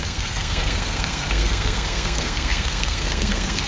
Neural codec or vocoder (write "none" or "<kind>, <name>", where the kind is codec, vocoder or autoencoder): codec, SNAC